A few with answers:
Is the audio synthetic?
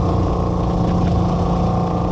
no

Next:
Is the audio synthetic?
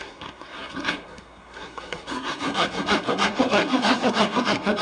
yes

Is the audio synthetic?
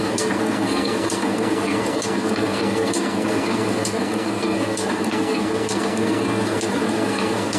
yes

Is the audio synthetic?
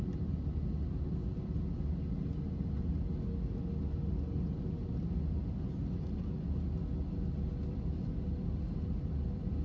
no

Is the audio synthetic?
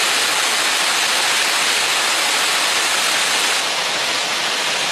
no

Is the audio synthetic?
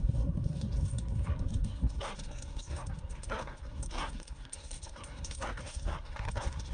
yes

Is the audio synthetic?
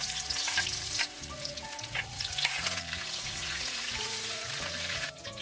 yes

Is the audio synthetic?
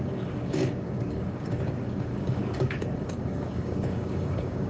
yes